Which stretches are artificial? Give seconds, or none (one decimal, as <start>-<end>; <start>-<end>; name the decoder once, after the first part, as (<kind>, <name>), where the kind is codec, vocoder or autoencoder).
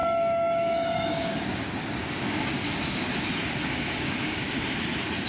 0.0-3.2 (codec, DAC); 3.6-4.6